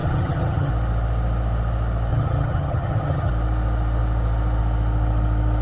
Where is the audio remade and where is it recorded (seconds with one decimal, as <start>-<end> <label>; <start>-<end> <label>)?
0.0-0.7 remade; 0.7-2.1 recorded; 2.1-3.3 remade; 3.3-5.6 recorded